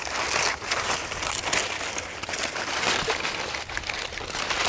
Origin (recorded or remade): recorded